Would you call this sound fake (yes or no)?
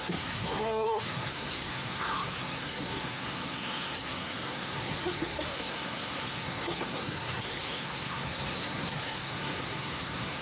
yes